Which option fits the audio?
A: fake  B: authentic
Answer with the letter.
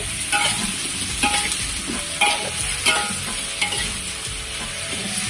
B